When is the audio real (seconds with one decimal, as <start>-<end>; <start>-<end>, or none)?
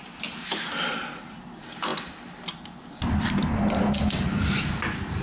0.0-5.2